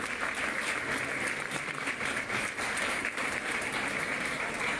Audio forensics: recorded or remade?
remade